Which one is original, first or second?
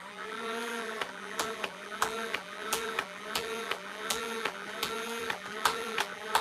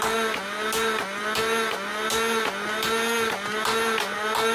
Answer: second